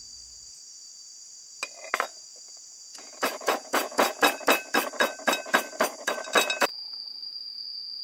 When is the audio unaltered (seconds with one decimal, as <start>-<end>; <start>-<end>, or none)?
0.0-2.3; 4.2-6.7